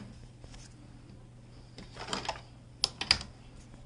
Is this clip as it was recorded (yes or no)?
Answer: yes